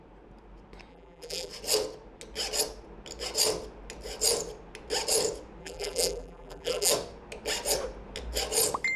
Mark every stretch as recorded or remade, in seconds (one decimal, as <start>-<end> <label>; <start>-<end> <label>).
0.0-0.9 recorded; 0.9-1.5 remade; 1.5-5.6 recorded; 5.6-6.9 remade; 6.9-9.0 recorded